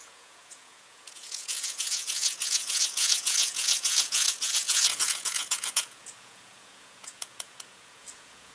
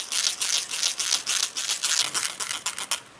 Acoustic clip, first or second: second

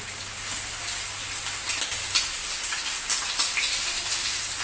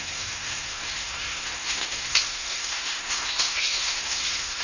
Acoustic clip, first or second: first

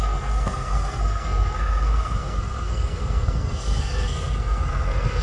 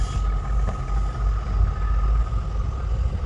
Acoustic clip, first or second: second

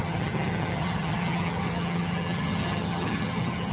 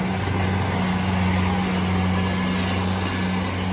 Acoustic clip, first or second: second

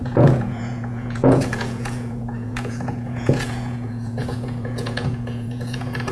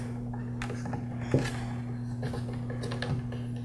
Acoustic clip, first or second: second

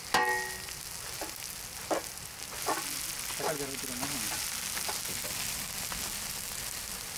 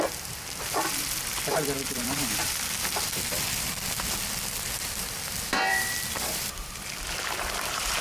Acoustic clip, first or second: first